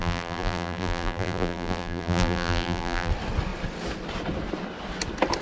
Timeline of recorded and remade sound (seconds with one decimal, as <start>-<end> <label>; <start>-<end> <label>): 0.0-3.1 remade; 3.1-5.4 recorded